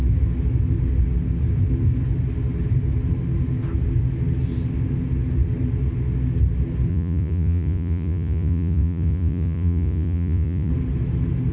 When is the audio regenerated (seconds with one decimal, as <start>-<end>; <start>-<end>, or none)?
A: 6.9-10.7